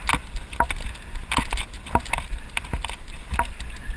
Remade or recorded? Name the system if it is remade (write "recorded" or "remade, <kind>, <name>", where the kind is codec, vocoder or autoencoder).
recorded